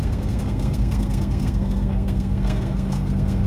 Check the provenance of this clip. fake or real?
fake